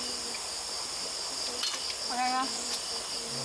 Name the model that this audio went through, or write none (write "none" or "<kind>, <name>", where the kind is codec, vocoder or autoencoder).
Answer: none